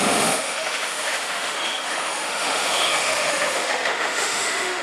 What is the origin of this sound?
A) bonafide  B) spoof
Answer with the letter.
B